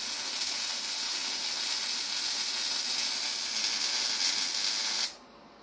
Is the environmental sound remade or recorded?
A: recorded